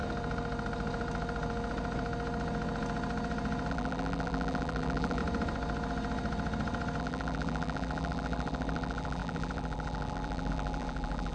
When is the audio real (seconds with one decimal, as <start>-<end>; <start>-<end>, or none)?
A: 0.0-3.7; 5.2-7.0